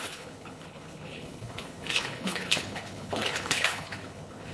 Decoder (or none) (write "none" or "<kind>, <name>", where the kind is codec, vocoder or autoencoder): codec, HILCodec